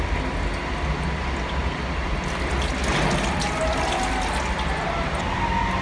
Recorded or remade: recorded